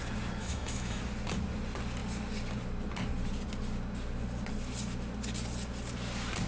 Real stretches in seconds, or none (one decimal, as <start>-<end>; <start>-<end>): 0.0-0.4; 1.0-6.5